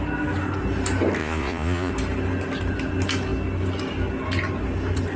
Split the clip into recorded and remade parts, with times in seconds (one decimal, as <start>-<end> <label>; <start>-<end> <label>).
0.0-1.2 recorded; 1.2-1.9 remade; 1.9-5.2 recorded